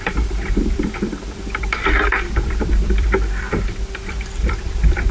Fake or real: fake